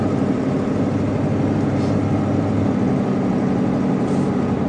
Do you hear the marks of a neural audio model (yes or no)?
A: no